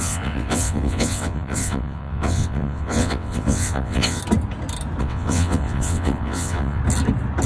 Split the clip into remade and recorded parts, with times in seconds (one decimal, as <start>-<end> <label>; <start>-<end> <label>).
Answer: 0.0-4.2 remade; 4.2-5.0 recorded; 5.0-6.8 remade; 6.8-7.5 recorded